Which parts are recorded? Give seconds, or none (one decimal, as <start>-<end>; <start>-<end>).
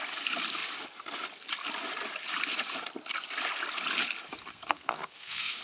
0.0-4.5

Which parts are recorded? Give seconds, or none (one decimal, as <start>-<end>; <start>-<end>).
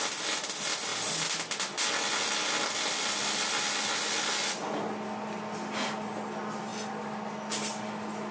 0.0-8.3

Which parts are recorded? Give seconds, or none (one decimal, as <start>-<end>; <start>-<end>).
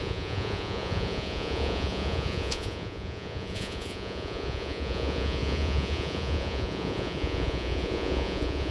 none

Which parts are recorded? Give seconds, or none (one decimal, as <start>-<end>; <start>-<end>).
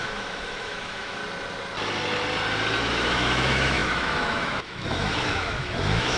1.2-2.8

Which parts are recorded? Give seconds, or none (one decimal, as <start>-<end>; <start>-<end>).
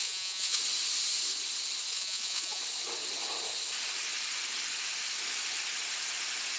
0.6-1.9; 2.6-6.6